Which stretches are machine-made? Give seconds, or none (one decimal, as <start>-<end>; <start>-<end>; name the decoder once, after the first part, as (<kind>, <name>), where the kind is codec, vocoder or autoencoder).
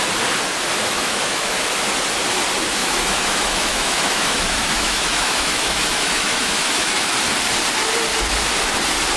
0.8-1.8 (autoencoder, DAC-VAE); 2.8-7.1